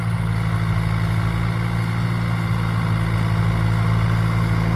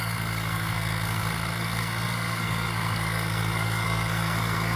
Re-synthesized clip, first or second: second